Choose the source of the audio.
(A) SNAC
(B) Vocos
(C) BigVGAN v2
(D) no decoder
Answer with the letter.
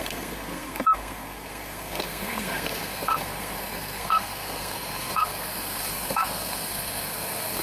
A